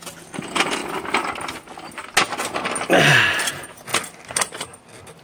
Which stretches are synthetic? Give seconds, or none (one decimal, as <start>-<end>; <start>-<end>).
0.0-0.8; 3.5-3.9